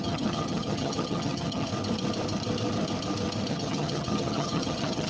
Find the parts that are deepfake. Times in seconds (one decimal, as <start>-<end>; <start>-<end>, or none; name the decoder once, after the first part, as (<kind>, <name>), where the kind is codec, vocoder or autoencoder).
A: 0.0-1.7 (vocoder, HiFi-GAN); 3.5-5.1